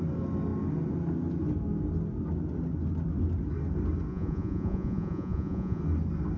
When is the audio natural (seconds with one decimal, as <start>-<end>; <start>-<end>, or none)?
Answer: 0.0-4.1; 5.8-6.4